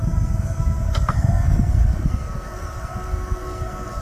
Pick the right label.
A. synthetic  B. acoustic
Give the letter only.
A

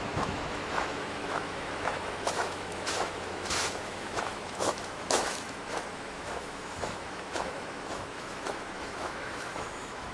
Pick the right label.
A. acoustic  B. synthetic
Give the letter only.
B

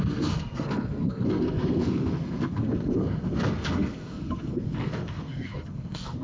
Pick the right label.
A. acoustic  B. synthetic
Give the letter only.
B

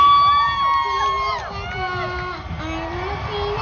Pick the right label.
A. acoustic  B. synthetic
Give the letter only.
A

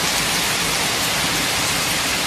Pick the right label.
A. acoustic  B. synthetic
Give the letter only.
A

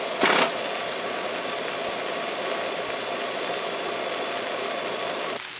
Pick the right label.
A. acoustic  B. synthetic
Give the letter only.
A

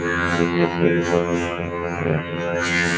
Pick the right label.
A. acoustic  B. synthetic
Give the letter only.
B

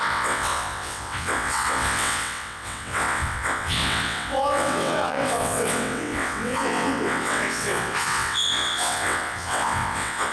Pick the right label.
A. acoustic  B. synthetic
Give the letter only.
B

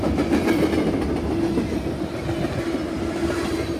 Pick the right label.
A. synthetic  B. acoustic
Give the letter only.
B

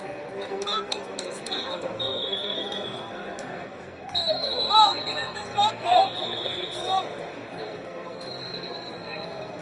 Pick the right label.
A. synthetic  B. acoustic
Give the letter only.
A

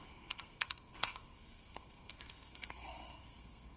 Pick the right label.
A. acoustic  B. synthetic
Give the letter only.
B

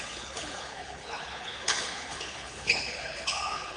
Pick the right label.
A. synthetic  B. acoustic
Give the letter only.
A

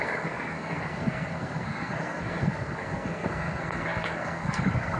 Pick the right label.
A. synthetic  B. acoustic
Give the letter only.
A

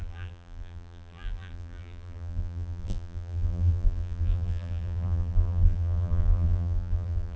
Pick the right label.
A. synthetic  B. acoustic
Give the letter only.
A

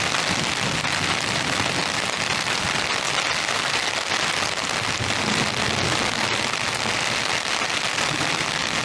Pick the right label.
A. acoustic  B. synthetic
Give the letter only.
A